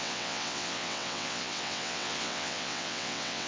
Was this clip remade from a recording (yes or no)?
yes